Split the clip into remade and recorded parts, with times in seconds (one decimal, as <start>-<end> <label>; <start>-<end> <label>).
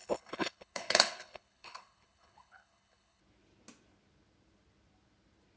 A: 0.0-3.2 remade; 3.2-5.6 recorded